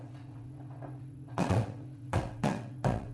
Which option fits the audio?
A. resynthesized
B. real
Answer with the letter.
A